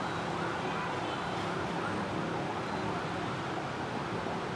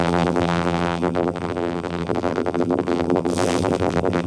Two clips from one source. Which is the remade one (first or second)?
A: second